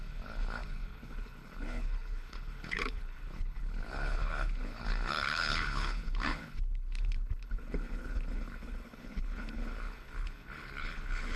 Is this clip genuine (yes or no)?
no